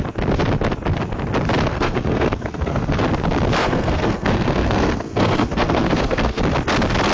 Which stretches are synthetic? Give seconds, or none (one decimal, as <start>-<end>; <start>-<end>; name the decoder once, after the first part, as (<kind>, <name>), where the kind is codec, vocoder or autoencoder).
1.7-2.9 (codec, SNAC); 3.6-6.4